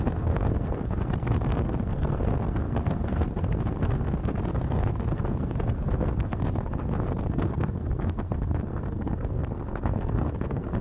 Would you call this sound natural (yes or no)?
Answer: no